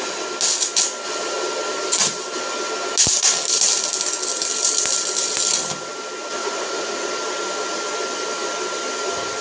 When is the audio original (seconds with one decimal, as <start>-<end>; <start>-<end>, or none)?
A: 0.0-6.4; 7.1-9.4